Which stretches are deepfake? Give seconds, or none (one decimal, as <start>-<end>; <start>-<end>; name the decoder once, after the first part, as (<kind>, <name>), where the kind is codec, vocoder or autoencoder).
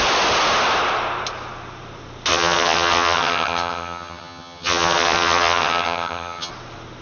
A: 2.3-6.5 (vocoder, HiFi-GAN)